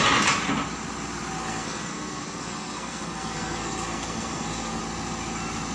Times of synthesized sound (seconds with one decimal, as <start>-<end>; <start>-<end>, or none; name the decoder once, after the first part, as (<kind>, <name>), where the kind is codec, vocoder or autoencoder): 1.4-4.8 (codec, SNAC)